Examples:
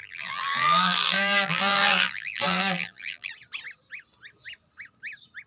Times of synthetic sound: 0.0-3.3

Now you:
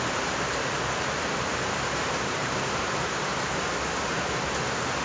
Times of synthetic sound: 2.4-3.1

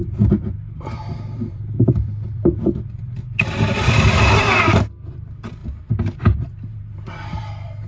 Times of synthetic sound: 0.0-4.0; 5.6-6.2; 6.7-7.9

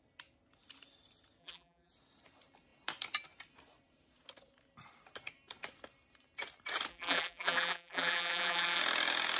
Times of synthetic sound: 1.4-1.9; 6.9-8.8

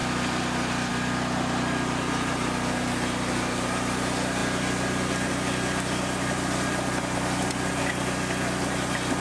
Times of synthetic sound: none